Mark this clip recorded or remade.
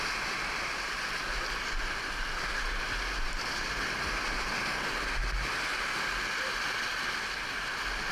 recorded